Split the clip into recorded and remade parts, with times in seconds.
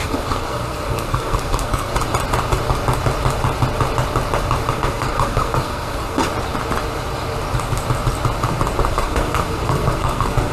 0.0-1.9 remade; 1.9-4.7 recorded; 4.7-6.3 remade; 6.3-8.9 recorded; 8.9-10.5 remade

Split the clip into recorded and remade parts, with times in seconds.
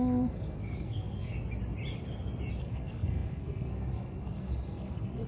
0.0-1.3 remade; 1.3-2.6 recorded; 2.6-5.3 remade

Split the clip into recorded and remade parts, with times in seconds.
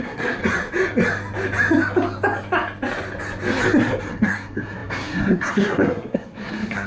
0.0-0.4 remade; 0.4-4.0 recorded; 4.0-6.9 remade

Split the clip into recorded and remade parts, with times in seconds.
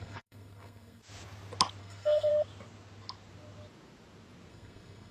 0.0-1.0 remade; 1.0-1.8 recorded; 1.8-2.3 remade; 2.3-4.5 recorded; 4.5-5.1 remade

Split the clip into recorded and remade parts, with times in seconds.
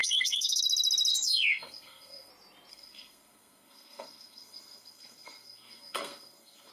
0.0-0.6 remade; 0.6-1.1 recorded; 1.1-2.3 remade; 2.3-2.7 recorded; 2.7-6.7 remade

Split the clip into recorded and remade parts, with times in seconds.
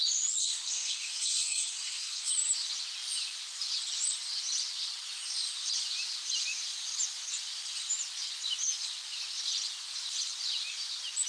0.0-0.4 recorded; 0.4-2.3 remade; 2.3-11.3 recorded